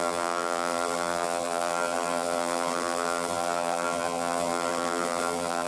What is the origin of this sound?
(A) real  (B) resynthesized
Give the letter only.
B